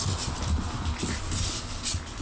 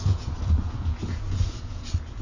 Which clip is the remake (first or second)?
second